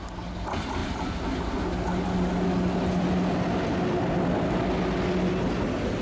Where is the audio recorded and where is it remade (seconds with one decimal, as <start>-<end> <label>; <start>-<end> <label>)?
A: 0.0-6.0 recorded